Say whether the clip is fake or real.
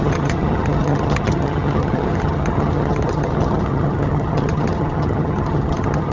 fake